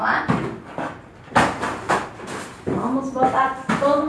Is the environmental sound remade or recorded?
recorded